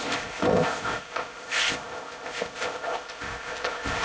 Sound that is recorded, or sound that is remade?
remade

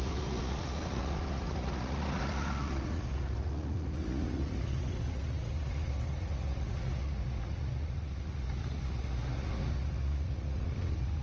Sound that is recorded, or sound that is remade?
remade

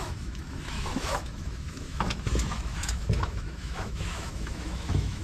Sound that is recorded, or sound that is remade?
remade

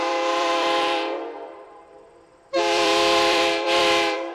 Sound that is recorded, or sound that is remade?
remade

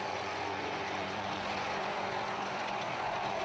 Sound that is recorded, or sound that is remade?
remade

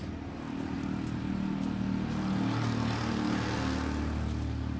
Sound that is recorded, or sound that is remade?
recorded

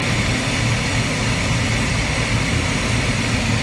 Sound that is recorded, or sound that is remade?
recorded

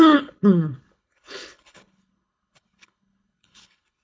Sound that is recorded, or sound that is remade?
remade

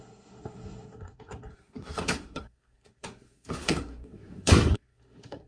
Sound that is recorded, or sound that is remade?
remade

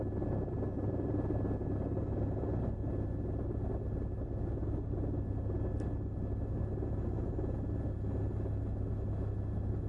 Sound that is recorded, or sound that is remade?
recorded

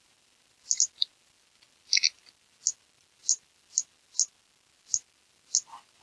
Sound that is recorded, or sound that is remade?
recorded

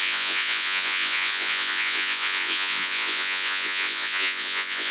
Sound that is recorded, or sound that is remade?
remade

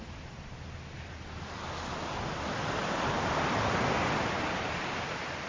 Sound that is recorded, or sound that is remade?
recorded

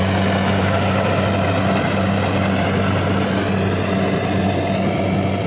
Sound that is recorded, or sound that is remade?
recorded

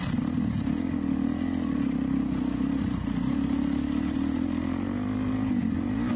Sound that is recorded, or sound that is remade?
recorded